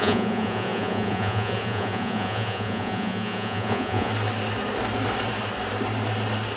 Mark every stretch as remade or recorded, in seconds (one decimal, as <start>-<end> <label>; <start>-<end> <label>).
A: 0.0-4.1 remade; 4.1-6.6 recorded